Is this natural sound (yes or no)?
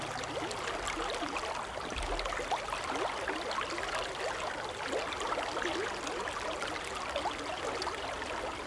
yes